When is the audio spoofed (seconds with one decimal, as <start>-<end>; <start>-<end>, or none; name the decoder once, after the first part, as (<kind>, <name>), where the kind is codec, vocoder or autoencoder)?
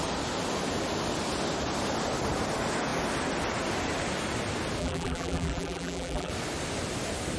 4.8-6.3 (vocoder, BigVGAN v2)